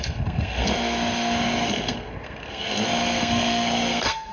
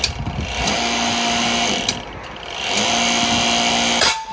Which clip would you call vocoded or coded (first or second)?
first